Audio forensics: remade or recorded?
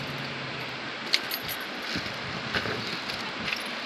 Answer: recorded